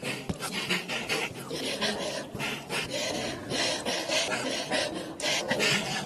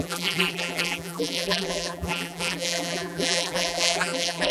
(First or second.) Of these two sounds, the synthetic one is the second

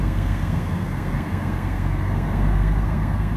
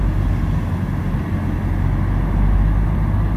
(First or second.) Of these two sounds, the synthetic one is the first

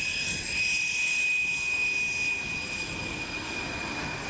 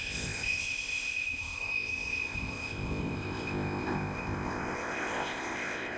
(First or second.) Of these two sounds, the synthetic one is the second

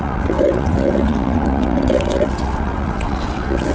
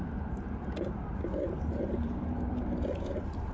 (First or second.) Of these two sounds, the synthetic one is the first